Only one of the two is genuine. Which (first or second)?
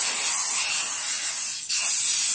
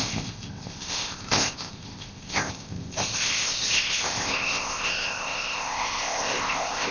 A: first